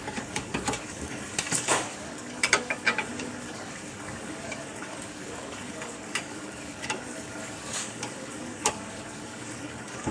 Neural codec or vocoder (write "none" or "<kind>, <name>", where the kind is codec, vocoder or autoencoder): codec, DAC